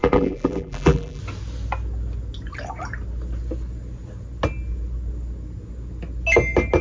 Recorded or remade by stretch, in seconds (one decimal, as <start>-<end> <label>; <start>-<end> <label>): 0.0-1.2 remade; 1.2-6.8 recorded